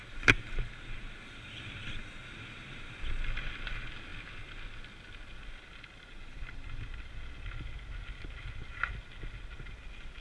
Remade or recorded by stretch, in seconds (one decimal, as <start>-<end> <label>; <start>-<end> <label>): 0.0-10.2 recorded